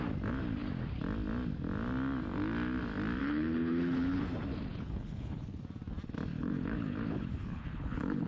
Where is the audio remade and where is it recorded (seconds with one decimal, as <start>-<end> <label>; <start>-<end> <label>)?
0.0-3.2 recorded; 3.2-4.2 remade; 4.2-4.7 recorded; 4.7-5.6 remade; 5.6-6.3 recorded; 6.3-8.3 remade